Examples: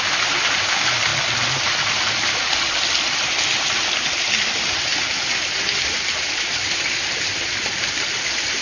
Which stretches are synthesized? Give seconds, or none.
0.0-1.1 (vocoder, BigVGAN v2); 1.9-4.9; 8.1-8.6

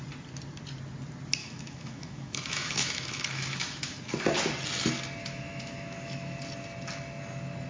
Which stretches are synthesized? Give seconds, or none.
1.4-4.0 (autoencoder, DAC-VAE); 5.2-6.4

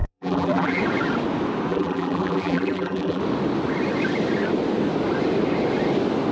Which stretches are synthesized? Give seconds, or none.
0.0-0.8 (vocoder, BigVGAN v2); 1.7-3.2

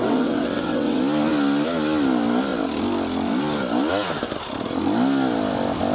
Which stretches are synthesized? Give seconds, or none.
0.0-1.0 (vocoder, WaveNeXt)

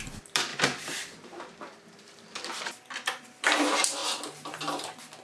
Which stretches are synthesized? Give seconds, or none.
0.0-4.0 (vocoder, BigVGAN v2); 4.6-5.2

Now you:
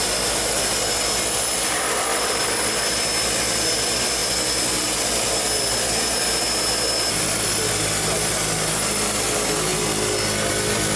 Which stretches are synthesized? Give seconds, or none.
none